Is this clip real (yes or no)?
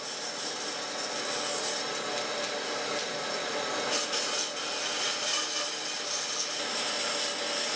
yes